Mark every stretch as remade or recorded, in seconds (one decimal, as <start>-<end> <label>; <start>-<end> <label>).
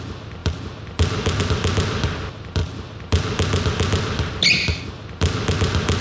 0.0-6.0 recorded